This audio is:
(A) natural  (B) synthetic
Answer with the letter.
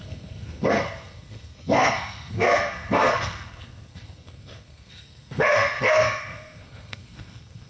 B